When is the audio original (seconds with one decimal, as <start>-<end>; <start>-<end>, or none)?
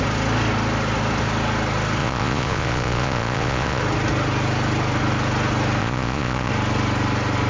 0.0-2.0; 3.8-5.8; 6.5-7.5